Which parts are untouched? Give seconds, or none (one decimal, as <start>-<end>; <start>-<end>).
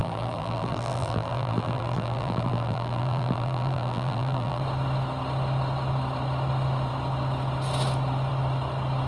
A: 4.6-9.1